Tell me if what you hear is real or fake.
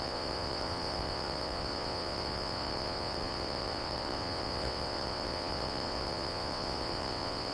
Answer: fake